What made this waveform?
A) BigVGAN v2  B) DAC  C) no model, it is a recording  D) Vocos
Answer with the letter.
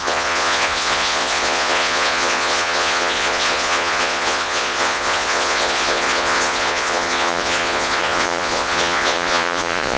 D